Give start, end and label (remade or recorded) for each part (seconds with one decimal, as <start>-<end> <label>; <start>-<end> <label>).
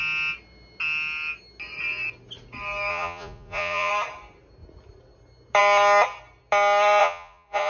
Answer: 0.0-2.9 recorded; 2.9-3.9 remade; 3.9-7.0 recorded; 7.0-7.7 remade